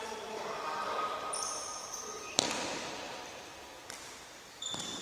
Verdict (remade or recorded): remade